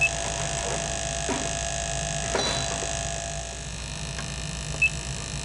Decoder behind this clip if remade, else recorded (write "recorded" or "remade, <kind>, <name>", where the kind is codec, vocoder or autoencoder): recorded